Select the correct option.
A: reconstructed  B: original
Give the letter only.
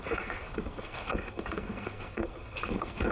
A